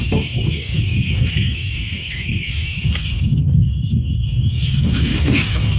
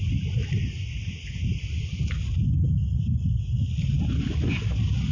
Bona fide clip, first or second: second